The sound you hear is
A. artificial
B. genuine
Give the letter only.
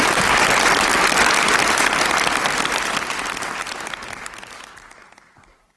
B